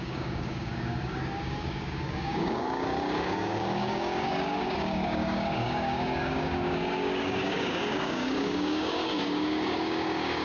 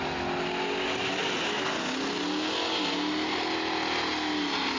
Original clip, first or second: second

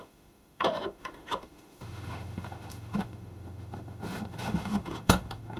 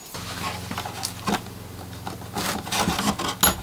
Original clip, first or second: second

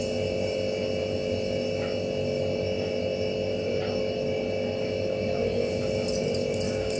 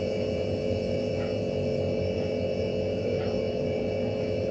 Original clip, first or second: first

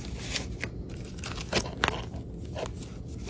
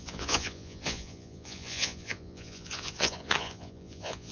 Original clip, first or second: first